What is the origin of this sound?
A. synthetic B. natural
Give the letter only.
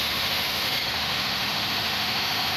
A